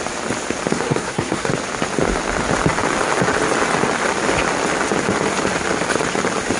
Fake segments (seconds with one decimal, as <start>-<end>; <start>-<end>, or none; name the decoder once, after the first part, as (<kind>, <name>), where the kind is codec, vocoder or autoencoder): 0.7-1.5 (codec, SNAC)